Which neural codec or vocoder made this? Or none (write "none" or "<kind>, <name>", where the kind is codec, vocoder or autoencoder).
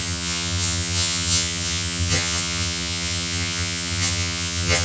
vocoder, HiFi-GAN